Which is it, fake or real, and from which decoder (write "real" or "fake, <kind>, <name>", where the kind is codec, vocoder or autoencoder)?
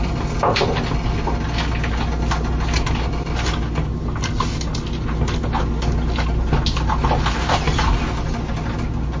real